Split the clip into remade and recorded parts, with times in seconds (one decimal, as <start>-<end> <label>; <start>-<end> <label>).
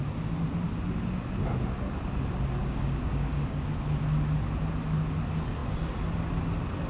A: 0.0-2.6 recorded; 2.6-3.7 remade; 3.7-6.9 recorded